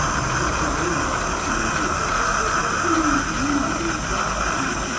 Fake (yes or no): no